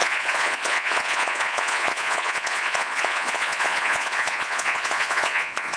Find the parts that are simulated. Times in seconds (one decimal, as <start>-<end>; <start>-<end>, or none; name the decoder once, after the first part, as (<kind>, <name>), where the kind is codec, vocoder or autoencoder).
0.0-5.8 (vocoder, Vocos)